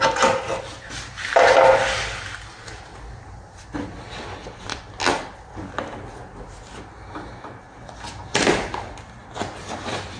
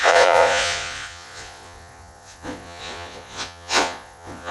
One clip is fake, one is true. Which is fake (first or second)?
second